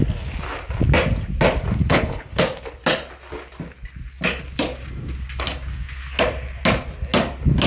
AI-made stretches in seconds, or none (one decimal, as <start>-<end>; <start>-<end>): 1.8-2.4